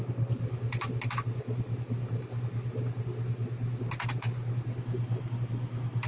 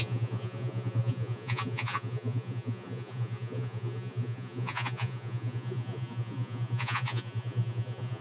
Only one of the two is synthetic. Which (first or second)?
second